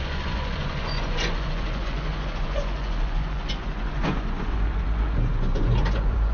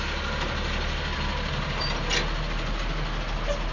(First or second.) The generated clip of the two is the first